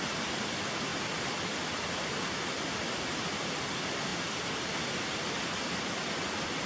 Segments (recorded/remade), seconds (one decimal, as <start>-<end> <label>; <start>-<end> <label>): 0.0-6.7 recorded

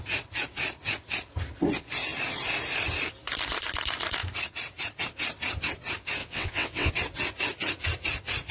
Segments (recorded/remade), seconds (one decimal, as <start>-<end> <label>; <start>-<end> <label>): 0.0-6.2 recorded; 6.2-6.9 remade; 6.9-8.5 recorded

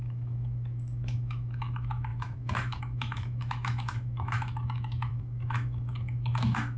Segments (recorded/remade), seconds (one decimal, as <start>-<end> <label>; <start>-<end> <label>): 0.0-6.8 remade

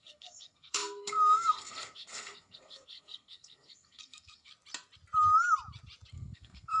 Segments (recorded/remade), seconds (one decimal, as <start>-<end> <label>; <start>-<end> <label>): 0.0-4.5 remade; 4.5-6.1 recorded; 6.1-6.8 remade

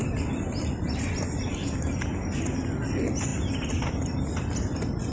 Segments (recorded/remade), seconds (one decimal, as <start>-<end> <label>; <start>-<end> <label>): 0.0-5.1 recorded

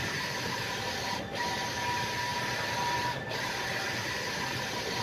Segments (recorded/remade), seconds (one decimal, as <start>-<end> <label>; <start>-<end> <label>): 0.0-5.0 remade

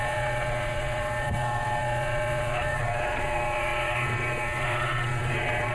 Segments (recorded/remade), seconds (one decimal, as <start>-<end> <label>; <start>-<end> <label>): 0.0-5.7 remade

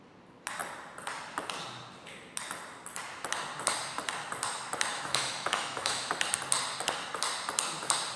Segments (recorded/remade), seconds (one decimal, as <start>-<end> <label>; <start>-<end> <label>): 0.0-4.9 recorded; 4.9-6.1 remade; 6.1-8.2 recorded